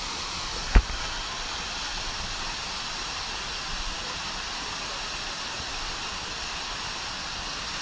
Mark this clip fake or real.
real